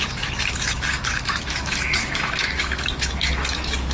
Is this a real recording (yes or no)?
no